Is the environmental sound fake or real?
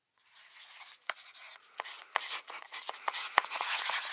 fake